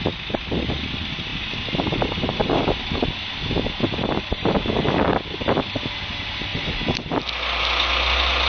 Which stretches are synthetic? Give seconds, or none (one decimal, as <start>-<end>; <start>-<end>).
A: none